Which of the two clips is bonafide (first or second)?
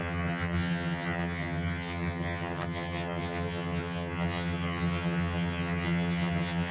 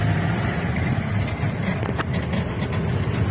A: second